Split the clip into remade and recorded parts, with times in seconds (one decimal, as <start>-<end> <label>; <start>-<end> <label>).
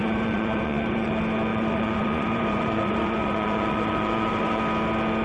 0.0-1.1 remade; 1.1-1.5 recorded; 1.5-4.6 remade; 4.6-5.2 recorded